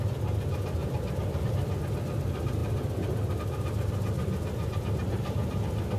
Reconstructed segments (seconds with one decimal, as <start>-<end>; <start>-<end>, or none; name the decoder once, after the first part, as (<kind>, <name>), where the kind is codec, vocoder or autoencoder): 0.8-1.5 (vocoder, BigVGAN v2)